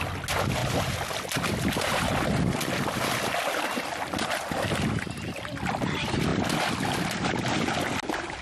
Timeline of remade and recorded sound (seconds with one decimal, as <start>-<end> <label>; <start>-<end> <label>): 0.0-8.4 recorded